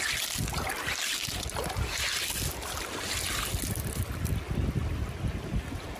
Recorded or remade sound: recorded